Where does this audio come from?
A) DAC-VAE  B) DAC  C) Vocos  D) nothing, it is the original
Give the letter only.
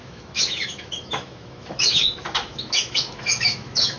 A